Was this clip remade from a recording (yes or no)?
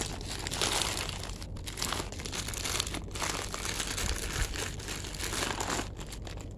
no